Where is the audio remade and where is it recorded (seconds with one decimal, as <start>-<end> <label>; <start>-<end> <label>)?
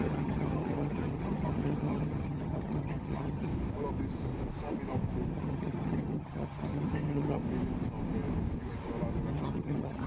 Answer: 0.0-3.5 remade; 3.5-5.3 recorded; 5.3-7.4 remade; 7.4-9.3 recorded; 9.3-10.1 remade